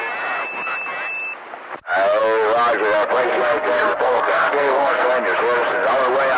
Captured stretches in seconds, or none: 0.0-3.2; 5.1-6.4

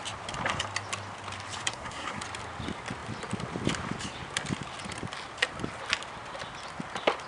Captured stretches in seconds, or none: 0.0-1.7; 2.2-7.3

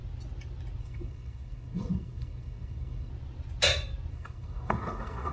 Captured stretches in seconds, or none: 0.0-0.8; 3.1-4.1

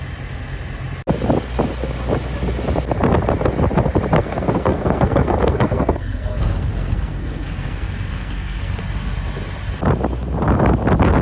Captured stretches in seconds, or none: 0.0-4.2; 8.8-11.2